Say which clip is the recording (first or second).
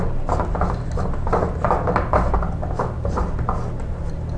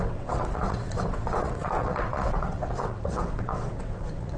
first